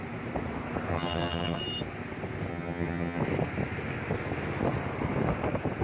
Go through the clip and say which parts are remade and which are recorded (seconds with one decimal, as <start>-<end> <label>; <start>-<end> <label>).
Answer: 0.0-0.9 recorded; 0.9-1.6 remade; 1.6-2.5 recorded; 2.5-3.2 remade; 3.2-5.8 recorded